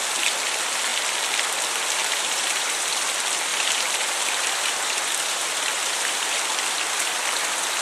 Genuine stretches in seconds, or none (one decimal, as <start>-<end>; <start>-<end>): 0.0-2.0; 3.0-3.5; 6.4-7.8

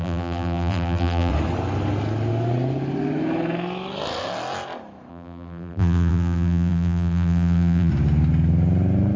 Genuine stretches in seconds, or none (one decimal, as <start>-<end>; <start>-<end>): 1.3-5.1; 7.9-9.2

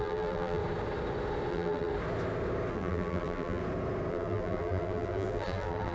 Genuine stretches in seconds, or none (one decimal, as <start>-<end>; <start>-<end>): 0.6-1.5; 1.9-2.7; 3.6-4.1

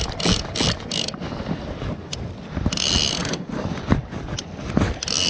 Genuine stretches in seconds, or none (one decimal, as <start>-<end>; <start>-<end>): 0.0-3.2; 4.0-5.3

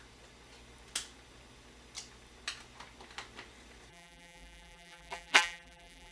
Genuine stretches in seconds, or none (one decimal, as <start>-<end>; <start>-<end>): 0.0-3.9

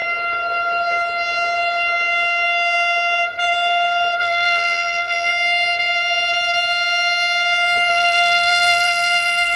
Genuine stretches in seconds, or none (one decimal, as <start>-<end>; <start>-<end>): 0.0-4.2; 5.3-7.9